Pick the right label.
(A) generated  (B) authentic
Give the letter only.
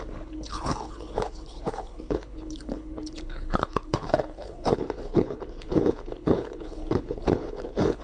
A